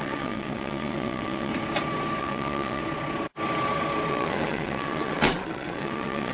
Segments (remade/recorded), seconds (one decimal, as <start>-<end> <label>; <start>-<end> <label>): 0.0-1.5 remade; 1.5-2.2 recorded; 2.2-2.8 remade; 2.8-4.1 recorded; 4.1-6.3 remade

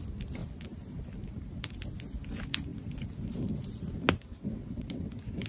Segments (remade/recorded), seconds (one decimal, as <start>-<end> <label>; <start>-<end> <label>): 0.0-4.3 recorded; 4.3-5.1 remade; 5.1-5.5 recorded

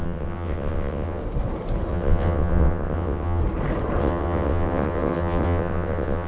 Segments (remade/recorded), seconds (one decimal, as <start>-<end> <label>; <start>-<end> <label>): 0.0-1.2 remade; 1.2-1.9 recorded; 1.9-3.4 remade; 3.4-4.0 recorded; 4.0-6.3 remade

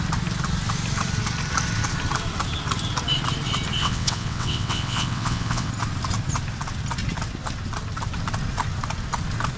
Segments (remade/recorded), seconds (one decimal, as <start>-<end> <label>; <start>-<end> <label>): 0.0-3.8 recorded; 3.8-5.7 remade; 5.7-9.6 recorded

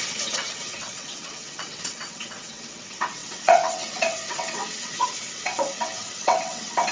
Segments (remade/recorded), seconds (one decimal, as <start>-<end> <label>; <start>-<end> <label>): 0.0-6.9 remade

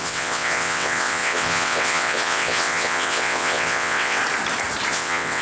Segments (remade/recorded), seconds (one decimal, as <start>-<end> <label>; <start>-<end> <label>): 0.0-4.2 remade; 4.2-4.9 recorded; 4.9-5.4 remade

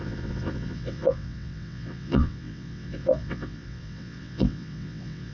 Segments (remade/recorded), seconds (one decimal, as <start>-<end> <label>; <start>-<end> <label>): 0.0-5.3 remade

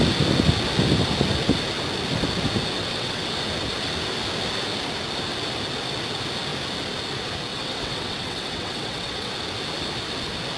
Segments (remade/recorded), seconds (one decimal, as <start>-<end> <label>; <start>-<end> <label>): 0.0-2.8 recorded; 2.8-3.3 remade; 3.3-7.5 recorded; 7.5-9.3 remade; 9.3-10.6 recorded